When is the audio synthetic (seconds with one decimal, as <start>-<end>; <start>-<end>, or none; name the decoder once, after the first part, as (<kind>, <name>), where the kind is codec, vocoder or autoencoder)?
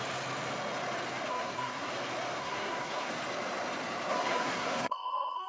1.3-1.9 (codec, SNAC); 2.4-3.1; 4.1-5.5